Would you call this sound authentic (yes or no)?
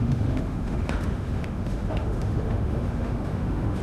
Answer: no